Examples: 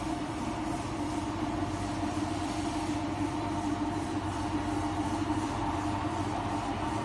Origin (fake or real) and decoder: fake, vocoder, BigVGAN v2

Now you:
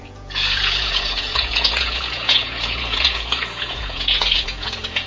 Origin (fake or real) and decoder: fake, vocoder, Vocos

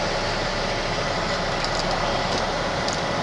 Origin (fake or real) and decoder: real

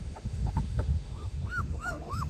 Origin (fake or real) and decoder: fake, autoencoder, DAC-VAE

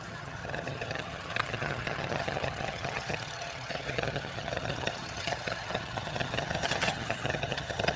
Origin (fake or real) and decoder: fake, vocoder, HiFi-GAN